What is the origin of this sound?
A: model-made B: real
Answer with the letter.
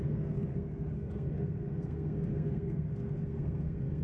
A